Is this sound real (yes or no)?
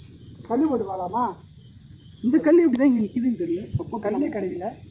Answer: no